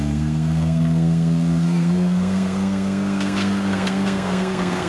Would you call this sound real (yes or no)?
no